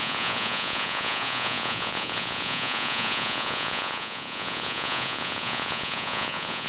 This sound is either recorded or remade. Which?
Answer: remade